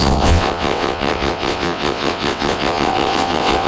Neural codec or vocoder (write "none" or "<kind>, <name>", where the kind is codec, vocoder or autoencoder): vocoder, WaveNeXt